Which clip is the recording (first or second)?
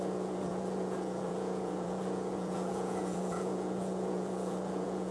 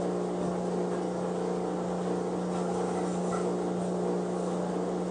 second